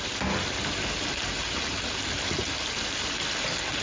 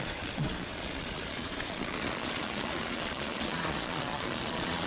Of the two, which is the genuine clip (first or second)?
first